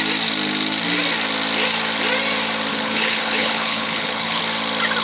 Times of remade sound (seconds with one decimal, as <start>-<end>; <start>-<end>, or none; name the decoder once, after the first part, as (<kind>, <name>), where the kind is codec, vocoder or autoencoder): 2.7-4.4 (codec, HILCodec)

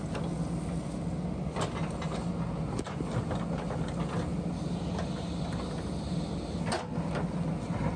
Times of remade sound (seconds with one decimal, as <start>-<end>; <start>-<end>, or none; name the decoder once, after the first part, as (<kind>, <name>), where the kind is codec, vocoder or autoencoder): none

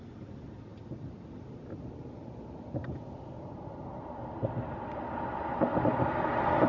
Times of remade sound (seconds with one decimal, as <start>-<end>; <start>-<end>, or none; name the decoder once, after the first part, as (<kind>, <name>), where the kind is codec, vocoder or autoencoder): none

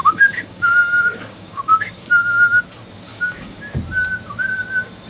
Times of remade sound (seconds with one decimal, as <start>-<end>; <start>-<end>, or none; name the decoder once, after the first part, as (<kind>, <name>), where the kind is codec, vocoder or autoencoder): 0.0-2.6 (codec, DAC); 3.1-3.6

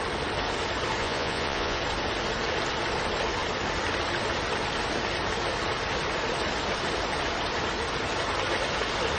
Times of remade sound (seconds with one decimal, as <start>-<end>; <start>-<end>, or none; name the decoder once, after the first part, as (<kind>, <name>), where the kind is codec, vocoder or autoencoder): 1.0-1.8 (vocoder, Vocos)

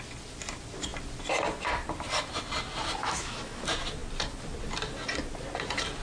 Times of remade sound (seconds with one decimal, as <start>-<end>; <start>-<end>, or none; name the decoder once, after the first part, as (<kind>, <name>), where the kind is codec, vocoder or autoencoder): 3.0-3.6 (autoencoder, DAC-VAE)

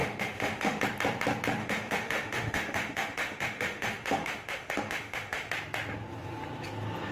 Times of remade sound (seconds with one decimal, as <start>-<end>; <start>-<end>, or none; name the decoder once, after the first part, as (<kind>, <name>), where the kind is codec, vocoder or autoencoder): 0.0-0.8 (autoencoder, DAC-VAE); 1.6-5.5

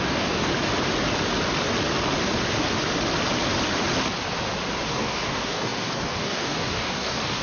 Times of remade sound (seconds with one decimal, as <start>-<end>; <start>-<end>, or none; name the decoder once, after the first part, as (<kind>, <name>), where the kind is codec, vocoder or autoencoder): 0.0-0.5 (codec, DAC); 4.9-7.4